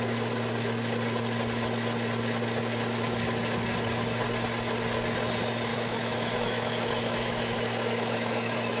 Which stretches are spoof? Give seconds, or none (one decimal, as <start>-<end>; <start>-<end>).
5.7-8.8